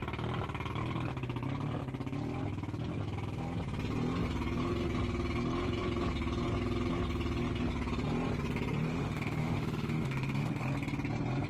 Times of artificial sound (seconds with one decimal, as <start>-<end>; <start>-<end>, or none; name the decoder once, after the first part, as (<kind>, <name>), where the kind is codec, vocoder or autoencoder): 8.9-10.6 (autoencoder, DAC-VAE)